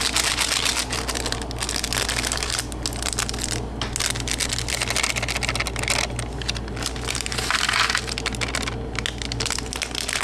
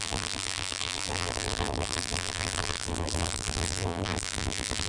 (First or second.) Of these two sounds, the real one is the first